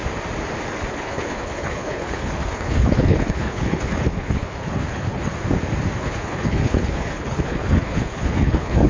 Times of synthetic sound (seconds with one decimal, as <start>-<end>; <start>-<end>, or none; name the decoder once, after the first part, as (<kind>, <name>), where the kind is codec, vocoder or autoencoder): 0.9-5.3 (codec, HILCodec); 6.0-8.9